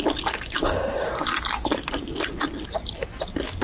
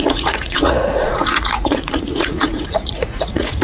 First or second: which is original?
first